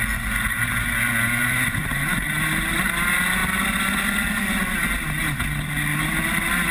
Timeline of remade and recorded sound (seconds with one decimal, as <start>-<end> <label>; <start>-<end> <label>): 0.0-1.4 recorded; 1.4-2.3 remade; 2.3-6.7 recorded